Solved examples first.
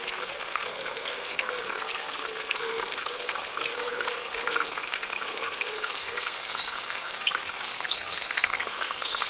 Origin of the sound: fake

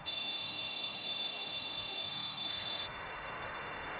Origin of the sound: fake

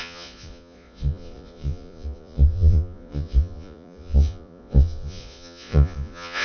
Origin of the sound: fake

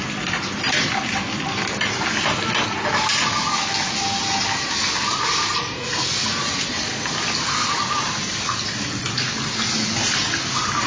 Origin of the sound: real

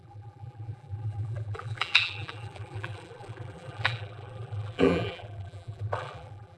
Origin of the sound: fake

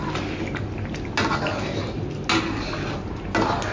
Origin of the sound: real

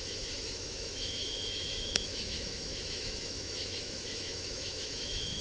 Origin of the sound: fake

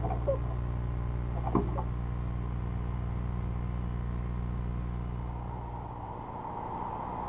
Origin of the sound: real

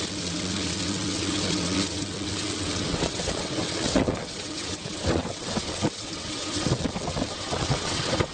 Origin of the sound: fake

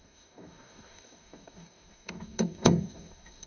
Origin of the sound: fake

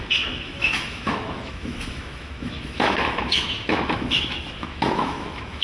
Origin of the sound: fake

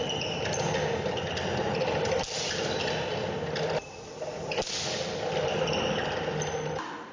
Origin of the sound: real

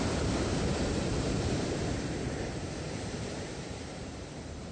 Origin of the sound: fake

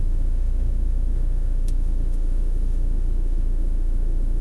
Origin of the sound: fake